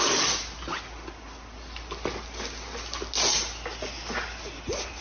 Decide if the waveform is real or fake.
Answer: real